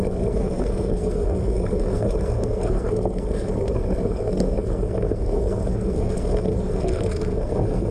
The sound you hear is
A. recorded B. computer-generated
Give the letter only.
B